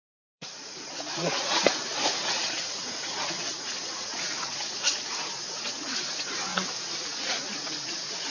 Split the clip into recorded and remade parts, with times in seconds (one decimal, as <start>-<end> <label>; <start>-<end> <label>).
0.0-6.5 remade; 6.5-7.3 recorded; 7.3-8.3 remade